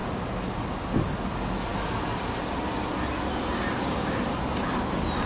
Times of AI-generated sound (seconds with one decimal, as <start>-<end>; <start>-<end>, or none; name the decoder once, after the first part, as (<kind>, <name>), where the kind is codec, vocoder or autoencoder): none